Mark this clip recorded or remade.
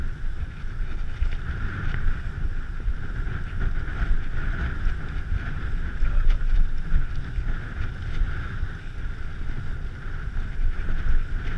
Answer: recorded